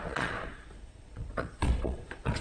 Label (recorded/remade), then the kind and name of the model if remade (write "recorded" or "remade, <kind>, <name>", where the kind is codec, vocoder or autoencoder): remade, vocoder, Vocos